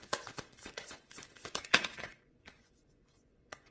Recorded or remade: remade